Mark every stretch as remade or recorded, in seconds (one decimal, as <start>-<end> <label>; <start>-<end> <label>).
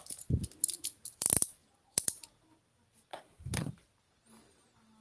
0.0-3.1 recorded; 3.1-3.7 remade; 3.7-5.0 recorded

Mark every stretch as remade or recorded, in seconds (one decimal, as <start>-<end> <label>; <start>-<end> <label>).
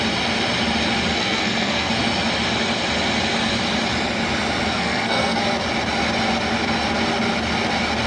0.0-1.1 recorded; 1.1-1.9 remade; 1.9-4.7 recorded; 4.7-5.4 remade; 5.4-8.1 recorded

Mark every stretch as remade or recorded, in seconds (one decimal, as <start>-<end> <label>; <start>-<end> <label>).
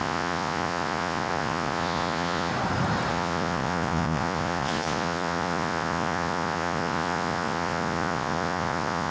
0.0-2.5 remade; 2.5-3.1 recorded; 3.1-9.1 remade